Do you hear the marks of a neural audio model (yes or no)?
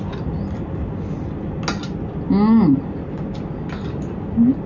no